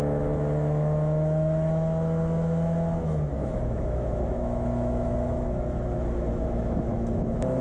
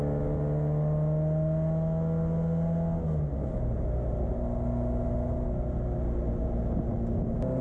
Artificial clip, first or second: first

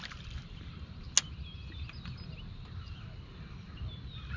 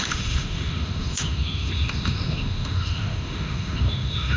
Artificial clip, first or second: second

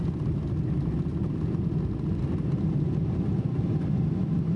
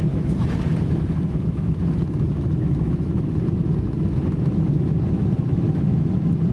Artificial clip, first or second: second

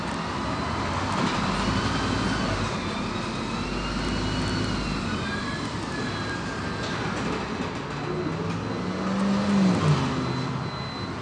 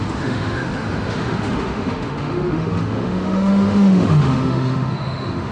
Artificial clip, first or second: second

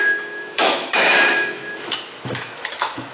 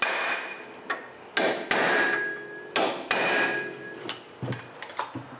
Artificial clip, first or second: first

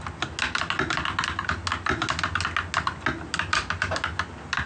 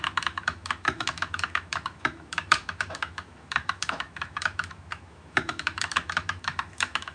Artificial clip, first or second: second